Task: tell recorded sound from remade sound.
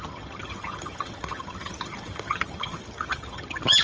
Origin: remade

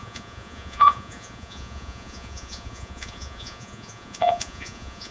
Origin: remade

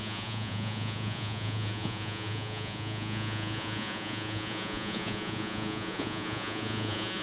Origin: remade